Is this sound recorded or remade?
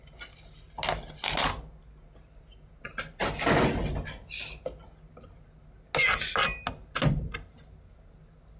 recorded